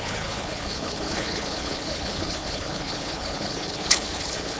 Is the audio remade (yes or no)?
yes